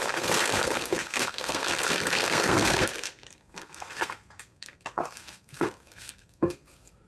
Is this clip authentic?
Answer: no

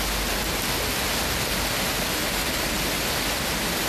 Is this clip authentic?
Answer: yes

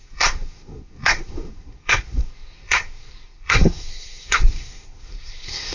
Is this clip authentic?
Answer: no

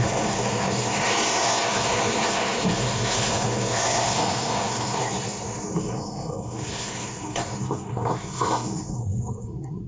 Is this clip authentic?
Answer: no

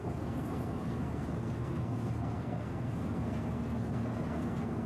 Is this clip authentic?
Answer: no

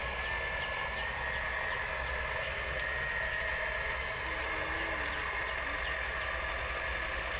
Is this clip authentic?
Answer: yes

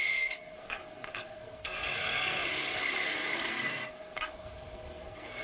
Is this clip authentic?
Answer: no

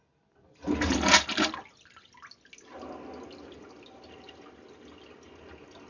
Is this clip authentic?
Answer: yes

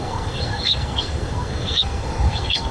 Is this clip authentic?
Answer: no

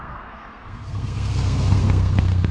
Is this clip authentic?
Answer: no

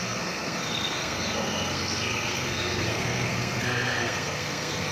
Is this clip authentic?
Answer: no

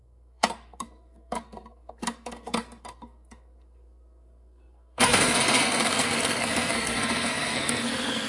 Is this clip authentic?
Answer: no